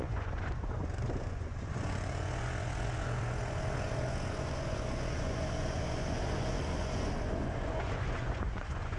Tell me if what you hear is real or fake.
fake